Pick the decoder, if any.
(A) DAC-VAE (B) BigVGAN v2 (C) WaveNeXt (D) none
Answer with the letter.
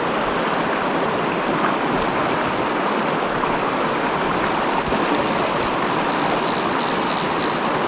D